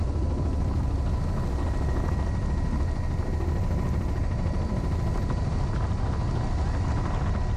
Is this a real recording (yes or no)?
yes